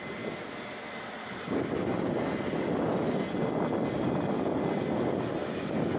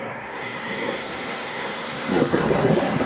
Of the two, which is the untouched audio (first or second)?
first